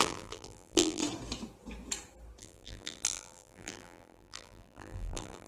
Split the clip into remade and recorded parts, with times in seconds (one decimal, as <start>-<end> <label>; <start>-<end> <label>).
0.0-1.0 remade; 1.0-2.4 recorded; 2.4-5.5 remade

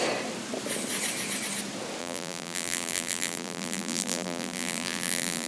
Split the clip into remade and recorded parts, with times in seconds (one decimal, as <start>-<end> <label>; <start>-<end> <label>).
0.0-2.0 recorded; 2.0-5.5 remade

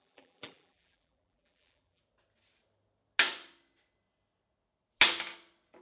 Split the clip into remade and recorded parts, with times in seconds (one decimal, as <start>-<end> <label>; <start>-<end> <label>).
0.0-2.0 remade; 2.0-5.8 recorded

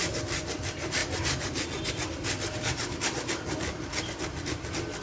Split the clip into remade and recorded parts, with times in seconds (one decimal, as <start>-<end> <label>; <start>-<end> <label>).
0.0-1.0 remade; 1.0-1.9 recorded; 1.9-5.0 remade